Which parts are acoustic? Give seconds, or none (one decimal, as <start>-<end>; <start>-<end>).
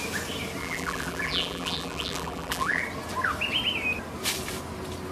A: 0.0-0.6; 2.8-5.1